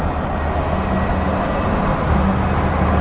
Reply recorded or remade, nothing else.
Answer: recorded